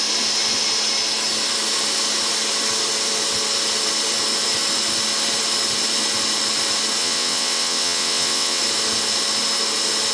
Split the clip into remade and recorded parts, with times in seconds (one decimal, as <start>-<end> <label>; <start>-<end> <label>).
0.0-7.0 recorded; 7.0-8.6 remade; 8.6-10.1 recorded